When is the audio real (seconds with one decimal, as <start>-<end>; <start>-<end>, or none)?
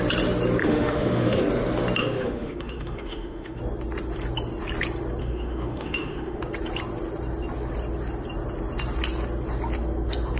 0.0-0.6; 1.4-2.0; 3.6-5.2; 6.4-10.4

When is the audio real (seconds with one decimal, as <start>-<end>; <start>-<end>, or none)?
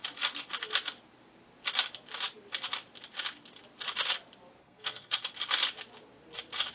0.0-4.6; 5.2-6.7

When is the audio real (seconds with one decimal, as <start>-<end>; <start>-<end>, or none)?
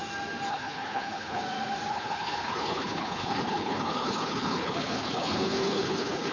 0.0-0.5; 1.4-1.9